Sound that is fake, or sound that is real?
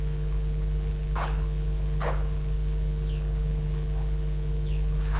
fake